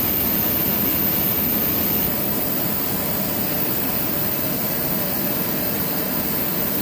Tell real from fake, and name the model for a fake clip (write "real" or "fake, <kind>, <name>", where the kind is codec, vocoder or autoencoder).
real